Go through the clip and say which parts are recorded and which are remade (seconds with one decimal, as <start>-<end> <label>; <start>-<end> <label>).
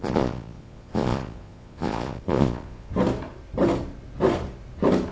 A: 0.0-2.9 remade; 2.9-5.1 recorded